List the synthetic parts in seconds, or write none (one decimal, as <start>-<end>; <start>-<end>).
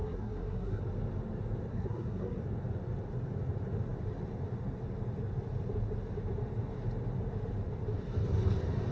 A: 0.0-0.8; 1.7-2.4